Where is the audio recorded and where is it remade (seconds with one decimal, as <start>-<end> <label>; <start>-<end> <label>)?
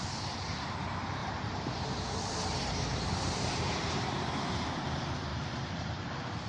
0.0-1.2 recorded; 1.2-4.5 remade; 4.5-5.3 recorded; 5.3-6.1 remade; 6.1-6.5 recorded